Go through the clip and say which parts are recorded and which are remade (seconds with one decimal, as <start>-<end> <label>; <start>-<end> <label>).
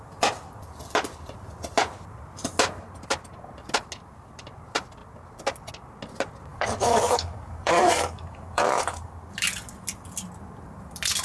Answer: 0.0-6.5 recorded; 6.5-9.1 remade; 9.1-11.2 recorded